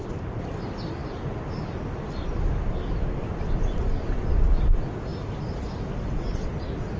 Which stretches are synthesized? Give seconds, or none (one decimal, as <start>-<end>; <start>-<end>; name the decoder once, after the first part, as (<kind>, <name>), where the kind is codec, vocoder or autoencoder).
none